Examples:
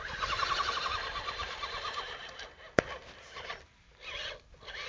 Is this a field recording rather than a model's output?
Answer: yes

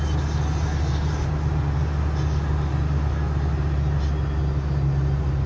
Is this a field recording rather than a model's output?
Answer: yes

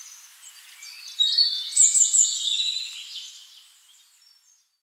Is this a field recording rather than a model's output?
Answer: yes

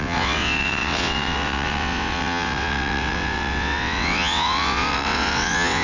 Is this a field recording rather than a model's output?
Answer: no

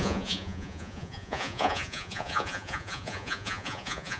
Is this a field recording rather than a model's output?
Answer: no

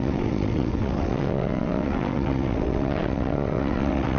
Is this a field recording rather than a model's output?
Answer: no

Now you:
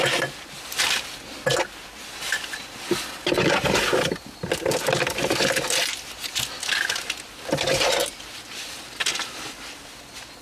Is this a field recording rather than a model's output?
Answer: yes